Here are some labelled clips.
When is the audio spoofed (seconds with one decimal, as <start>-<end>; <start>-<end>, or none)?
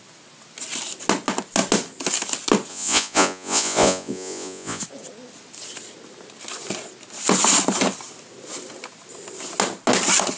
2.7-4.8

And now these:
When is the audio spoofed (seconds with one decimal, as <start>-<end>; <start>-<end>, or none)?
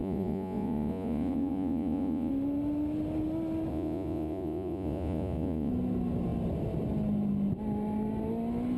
0.0-2.3; 3.7-5.7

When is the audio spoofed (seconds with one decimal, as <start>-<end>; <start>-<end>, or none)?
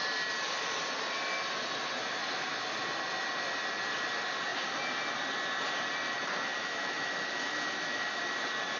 6.6-8.2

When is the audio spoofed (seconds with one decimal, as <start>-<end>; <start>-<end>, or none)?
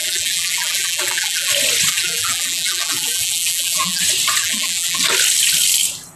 0.0-1.5; 1.9-4.0; 4.4-5.0